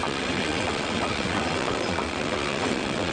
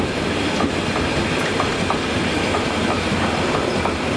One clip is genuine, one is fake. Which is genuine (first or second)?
second